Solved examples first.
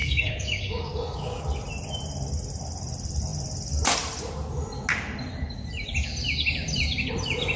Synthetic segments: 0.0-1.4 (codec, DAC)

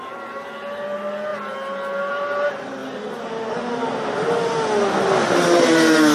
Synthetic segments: none